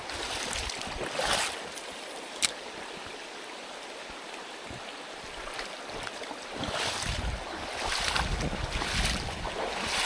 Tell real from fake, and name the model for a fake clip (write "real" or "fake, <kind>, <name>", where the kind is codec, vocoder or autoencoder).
real